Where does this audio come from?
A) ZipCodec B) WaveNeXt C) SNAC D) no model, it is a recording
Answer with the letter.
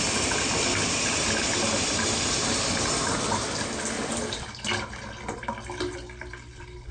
D